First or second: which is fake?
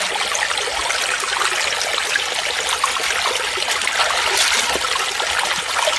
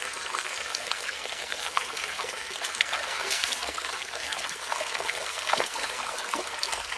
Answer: second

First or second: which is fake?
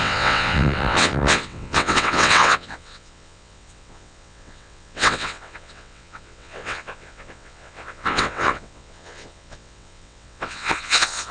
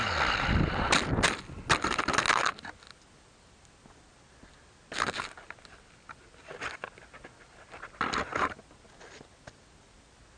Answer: first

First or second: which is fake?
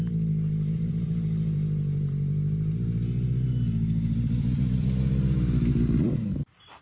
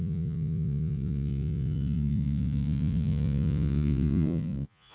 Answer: second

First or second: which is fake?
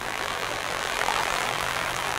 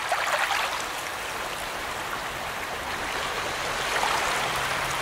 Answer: first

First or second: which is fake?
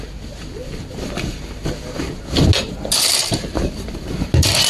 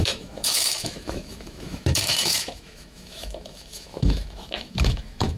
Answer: second